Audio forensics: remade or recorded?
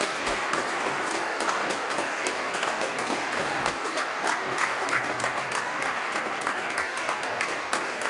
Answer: remade